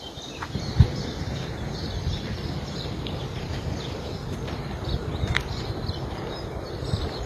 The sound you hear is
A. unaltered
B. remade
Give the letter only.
B